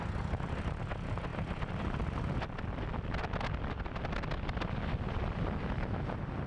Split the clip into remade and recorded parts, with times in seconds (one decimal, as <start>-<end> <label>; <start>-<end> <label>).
0.0-6.5 recorded